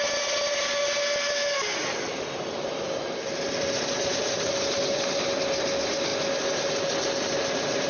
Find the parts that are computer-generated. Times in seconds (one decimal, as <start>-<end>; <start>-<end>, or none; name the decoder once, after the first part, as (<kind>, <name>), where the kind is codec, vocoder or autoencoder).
none